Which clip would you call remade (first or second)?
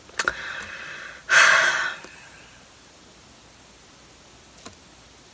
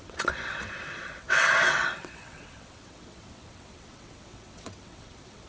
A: second